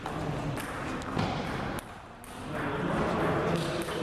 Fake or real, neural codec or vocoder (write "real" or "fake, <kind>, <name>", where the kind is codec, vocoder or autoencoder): real